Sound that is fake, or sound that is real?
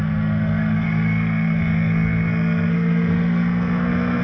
fake